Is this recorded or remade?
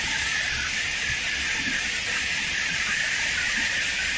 recorded